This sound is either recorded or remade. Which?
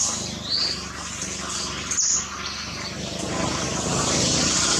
recorded